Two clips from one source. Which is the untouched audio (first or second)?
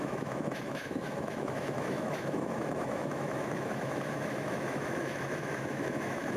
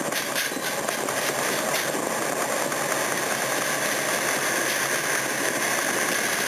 second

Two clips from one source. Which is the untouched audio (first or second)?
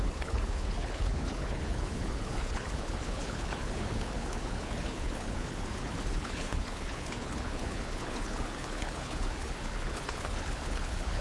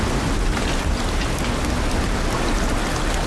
second